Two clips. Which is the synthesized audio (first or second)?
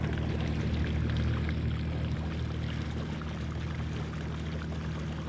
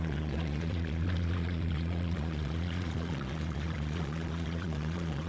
second